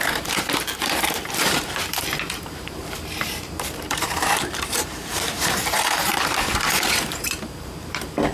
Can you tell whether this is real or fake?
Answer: fake